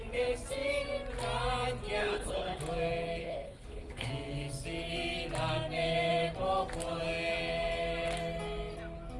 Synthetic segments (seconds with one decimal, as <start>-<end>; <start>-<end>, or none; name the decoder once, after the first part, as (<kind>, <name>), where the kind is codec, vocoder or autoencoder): 2.0-2.6 (codec, HILCodec); 3.2-4.1